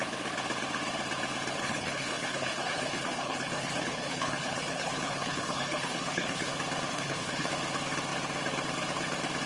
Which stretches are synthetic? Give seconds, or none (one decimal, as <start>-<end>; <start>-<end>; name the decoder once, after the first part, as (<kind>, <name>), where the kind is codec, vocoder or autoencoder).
1.6-6.5 (codec, HILCodec); 6.9-7.5